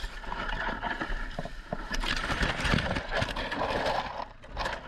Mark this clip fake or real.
real